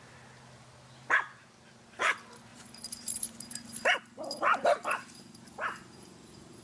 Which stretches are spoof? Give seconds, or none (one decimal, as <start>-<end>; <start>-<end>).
2.5-5.2